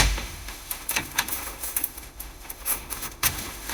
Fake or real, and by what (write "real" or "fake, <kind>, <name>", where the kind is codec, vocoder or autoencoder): fake, autoencoder, DAC-VAE